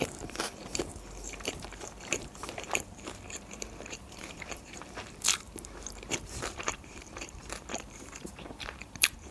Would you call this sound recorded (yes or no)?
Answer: no